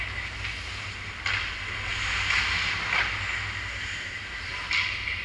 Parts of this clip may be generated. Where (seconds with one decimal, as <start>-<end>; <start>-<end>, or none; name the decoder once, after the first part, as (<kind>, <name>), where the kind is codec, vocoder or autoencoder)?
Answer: none